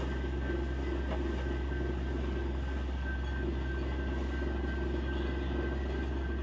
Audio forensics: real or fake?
real